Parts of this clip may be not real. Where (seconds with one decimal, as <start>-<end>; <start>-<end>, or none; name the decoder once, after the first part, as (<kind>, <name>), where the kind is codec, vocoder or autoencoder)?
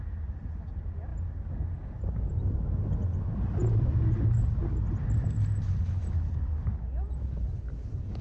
none